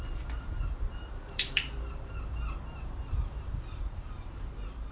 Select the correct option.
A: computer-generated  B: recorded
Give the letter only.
A